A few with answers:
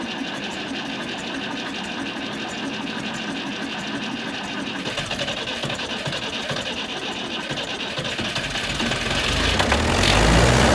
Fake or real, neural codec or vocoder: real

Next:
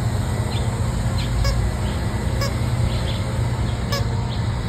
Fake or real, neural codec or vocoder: real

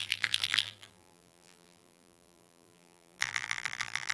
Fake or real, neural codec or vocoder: fake, vocoder, BigVGAN v2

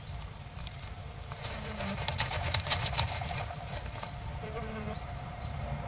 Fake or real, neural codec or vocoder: fake, vocoder, BigVGAN v2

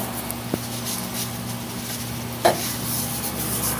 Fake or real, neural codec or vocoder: real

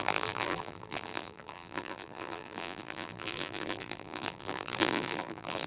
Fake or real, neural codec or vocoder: fake, vocoder, BigVGAN v2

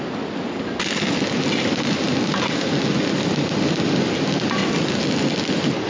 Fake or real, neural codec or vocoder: real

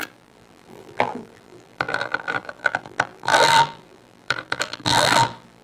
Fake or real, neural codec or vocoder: fake, vocoder, BigVGAN v2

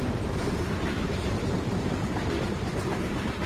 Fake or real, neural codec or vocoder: fake, vocoder, BigVGAN v2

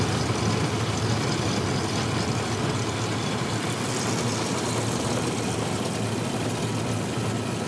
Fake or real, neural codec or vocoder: real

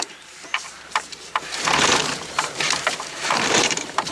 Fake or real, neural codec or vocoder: fake, vocoder, BigVGAN v2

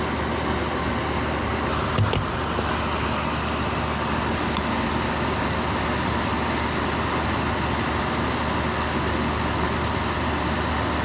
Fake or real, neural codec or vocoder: real